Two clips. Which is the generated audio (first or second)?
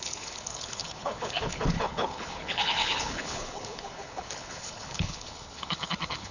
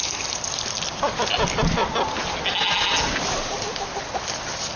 first